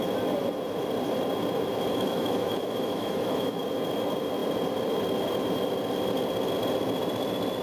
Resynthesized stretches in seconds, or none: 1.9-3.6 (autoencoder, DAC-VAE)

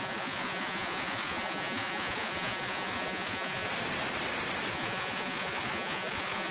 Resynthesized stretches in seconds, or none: 0.0-3.7 (vocoder, Vocos); 4.7-6.5